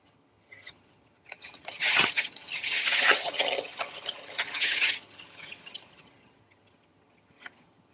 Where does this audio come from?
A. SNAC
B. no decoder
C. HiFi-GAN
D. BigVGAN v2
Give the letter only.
C